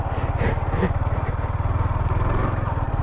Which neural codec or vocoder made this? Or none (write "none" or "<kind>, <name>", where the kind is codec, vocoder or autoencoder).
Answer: none